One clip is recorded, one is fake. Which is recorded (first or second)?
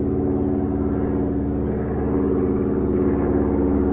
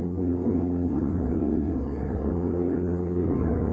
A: first